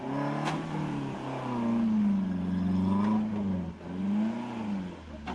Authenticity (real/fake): real